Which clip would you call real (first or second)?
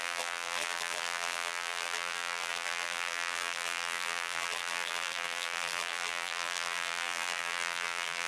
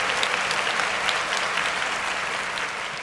second